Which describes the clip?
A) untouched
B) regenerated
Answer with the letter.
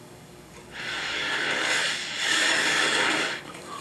B